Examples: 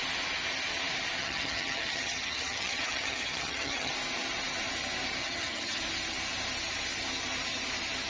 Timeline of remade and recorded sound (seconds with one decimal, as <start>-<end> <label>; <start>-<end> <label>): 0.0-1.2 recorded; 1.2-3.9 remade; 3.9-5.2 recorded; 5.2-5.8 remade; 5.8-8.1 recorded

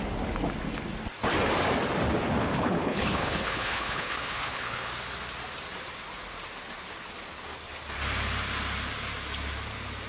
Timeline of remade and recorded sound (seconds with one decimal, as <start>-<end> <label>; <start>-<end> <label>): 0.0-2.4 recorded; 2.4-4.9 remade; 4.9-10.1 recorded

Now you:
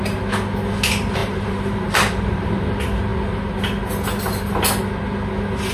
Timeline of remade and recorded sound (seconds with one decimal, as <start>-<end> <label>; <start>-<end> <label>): 0.0-1.2 recorded; 1.2-2.5 remade; 2.5-5.7 recorded